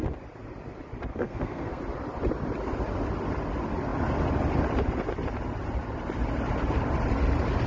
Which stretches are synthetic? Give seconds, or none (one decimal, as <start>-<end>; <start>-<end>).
1.1-1.8